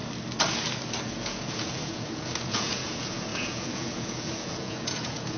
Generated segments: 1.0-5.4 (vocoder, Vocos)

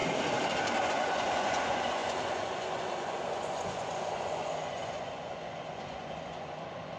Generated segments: 0.8-7.0 (vocoder, Vocos)

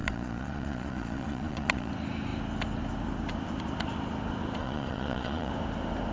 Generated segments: 0.0-1.9 (vocoder, Vocos); 4.6-5.5